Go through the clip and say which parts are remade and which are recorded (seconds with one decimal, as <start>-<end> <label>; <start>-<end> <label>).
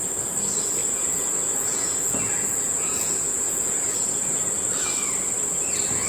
0.0-0.8 recorded; 0.8-4.5 remade; 4.5-6.1 recorded